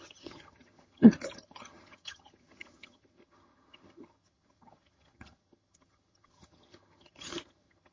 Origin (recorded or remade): remade